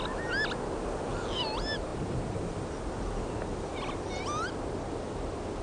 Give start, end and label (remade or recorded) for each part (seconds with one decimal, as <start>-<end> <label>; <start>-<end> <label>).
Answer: 0.0-5.6 recorded